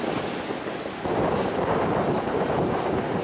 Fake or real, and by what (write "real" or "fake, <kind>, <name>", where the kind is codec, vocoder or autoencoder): real